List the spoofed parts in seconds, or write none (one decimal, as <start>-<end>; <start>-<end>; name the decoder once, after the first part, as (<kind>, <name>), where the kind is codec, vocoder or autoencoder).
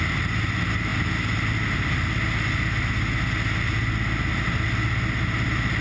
none